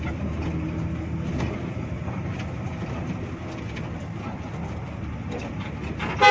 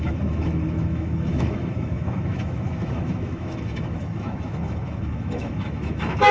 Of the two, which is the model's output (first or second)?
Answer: second